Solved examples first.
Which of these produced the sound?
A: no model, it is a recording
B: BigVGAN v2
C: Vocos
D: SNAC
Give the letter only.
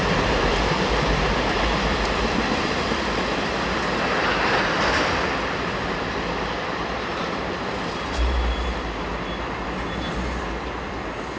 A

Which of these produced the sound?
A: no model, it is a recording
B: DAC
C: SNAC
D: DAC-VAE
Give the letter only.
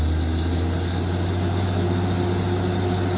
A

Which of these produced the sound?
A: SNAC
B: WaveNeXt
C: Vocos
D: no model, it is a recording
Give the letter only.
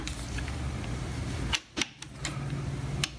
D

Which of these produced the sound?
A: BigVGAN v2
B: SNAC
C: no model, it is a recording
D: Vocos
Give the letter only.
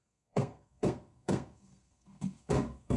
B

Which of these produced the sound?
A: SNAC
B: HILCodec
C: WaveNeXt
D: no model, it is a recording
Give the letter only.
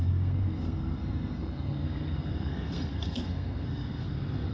A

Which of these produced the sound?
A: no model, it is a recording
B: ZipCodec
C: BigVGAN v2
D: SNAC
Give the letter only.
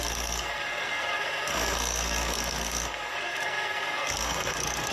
D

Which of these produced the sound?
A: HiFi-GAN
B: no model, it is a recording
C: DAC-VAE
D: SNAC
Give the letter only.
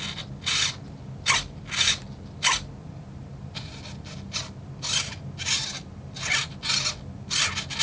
B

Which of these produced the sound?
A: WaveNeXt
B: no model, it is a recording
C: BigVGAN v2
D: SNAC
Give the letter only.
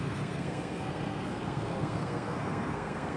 D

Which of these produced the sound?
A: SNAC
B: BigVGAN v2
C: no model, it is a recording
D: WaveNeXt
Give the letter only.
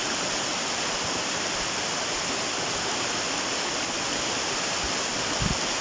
C